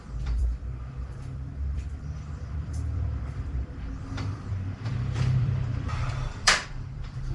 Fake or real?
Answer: fake